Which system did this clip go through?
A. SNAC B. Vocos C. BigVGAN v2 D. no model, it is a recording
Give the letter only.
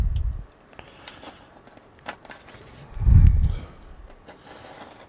D